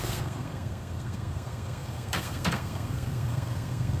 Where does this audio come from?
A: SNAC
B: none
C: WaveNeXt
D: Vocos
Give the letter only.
A